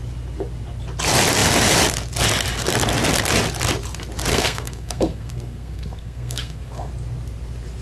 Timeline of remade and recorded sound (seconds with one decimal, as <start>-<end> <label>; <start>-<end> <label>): 0.0-4.3 recorded; 4.3-6.9 remade; 6.9-7.8 recorded